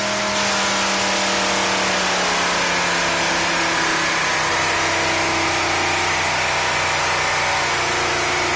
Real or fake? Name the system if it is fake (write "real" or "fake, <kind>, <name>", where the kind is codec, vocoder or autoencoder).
real